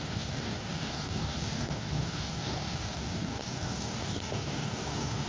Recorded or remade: remade